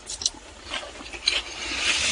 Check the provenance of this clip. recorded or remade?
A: recorded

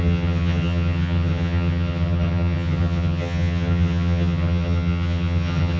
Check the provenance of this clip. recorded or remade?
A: remade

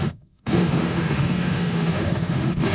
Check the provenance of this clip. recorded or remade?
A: remade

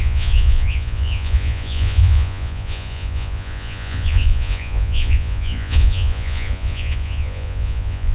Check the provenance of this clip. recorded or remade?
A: remade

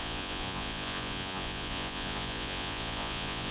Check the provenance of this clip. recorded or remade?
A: remade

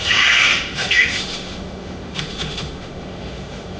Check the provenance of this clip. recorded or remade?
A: remade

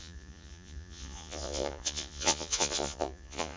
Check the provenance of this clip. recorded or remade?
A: remade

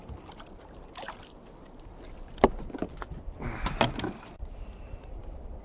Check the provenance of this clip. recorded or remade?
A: recorded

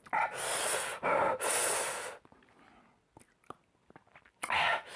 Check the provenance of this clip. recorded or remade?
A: recorded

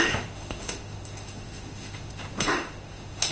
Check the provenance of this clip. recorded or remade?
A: remade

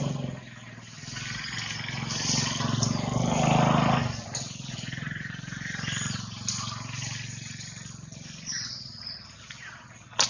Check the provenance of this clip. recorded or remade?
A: recorded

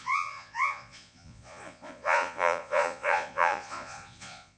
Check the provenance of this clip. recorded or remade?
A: remade